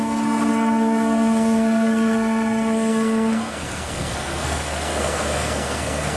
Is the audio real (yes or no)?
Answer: no